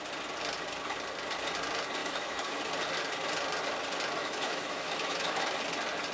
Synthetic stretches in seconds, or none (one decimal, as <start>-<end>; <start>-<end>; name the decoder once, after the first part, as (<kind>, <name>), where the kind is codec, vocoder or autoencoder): 2.0-2.6 (autoencoder, DAC-VAE); 4.2-5.6